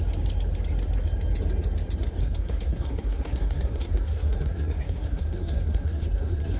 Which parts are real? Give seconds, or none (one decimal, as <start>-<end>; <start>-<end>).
0.0-2.2